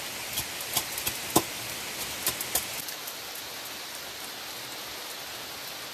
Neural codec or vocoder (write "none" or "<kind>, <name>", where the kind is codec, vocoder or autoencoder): none